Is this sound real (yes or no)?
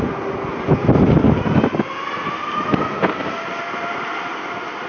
yes